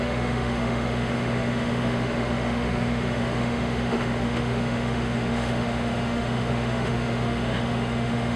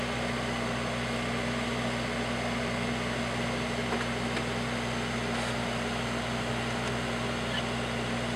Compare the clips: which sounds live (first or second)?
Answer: second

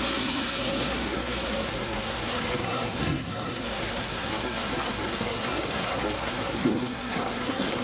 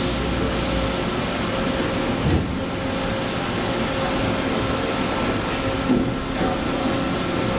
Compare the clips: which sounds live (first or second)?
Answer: second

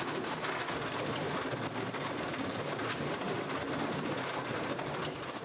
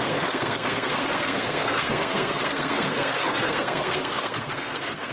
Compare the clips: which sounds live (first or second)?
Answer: first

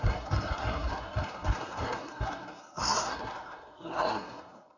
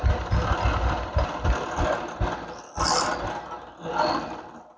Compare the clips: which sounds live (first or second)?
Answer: second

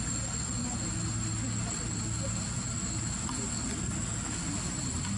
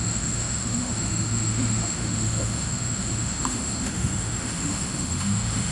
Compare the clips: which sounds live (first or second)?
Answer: first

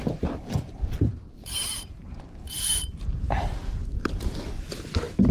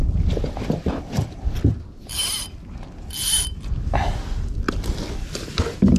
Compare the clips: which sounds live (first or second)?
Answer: second